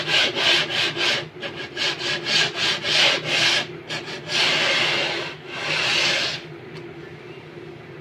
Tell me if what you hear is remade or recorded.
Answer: recorded